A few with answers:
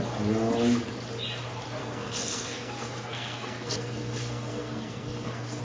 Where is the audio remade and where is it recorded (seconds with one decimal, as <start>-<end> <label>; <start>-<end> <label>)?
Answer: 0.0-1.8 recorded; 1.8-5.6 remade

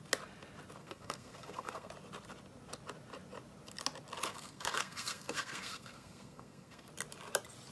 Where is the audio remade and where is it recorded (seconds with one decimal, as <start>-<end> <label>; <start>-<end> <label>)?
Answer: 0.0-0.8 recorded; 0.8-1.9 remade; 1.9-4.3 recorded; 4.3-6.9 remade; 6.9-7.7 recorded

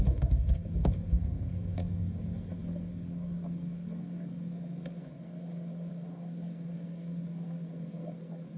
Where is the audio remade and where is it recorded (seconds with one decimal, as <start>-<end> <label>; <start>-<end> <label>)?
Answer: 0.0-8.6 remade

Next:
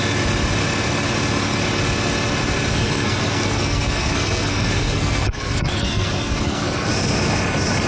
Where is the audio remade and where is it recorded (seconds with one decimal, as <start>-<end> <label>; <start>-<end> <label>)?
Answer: 0.0-2.7 recorded; 2.7-6.9 remade; 6.9-7.9 recorded

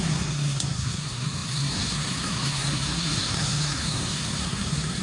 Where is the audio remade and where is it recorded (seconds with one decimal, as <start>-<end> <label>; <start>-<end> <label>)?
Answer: 0.0-5.0 remade